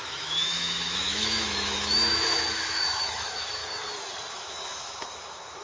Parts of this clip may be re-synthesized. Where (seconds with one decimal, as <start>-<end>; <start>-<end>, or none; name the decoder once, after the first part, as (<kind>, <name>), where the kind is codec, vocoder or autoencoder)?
0.0-3.6 (autoencoder, DAC-VAE); 4.3-5.6